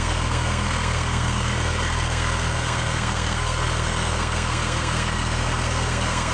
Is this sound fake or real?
fake